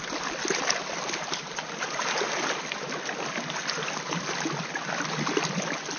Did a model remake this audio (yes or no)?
no